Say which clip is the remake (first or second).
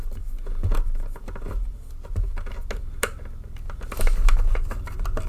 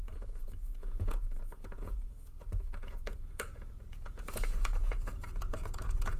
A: second